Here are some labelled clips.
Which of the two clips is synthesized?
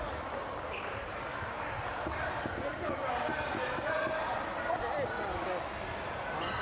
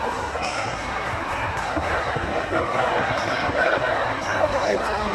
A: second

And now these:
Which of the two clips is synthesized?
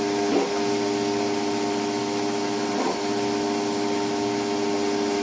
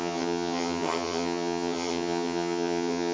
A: second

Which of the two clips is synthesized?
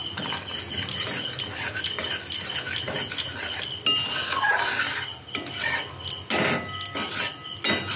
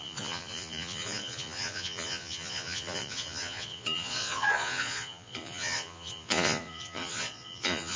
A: second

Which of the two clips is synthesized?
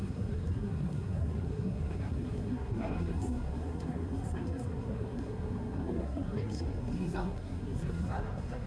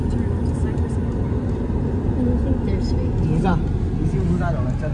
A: first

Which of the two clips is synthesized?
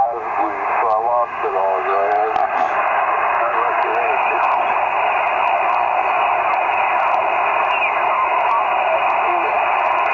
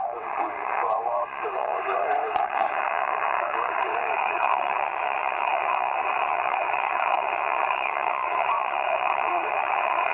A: second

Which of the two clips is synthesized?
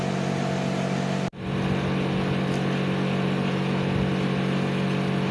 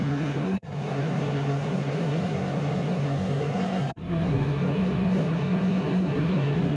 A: second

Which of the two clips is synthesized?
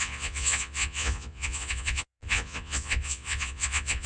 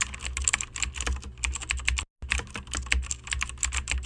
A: first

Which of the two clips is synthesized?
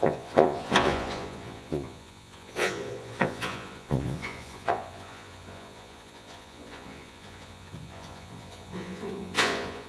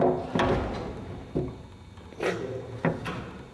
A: first